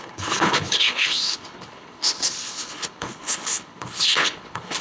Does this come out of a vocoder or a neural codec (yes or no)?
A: yes